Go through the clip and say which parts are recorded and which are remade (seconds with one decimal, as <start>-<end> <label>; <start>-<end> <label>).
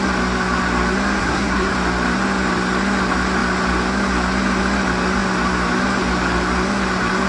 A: 0.0-1.2 recorded; 1.2-1.7 remade; 1.7-7.3 recorded